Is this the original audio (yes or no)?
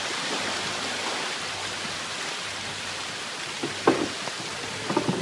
yes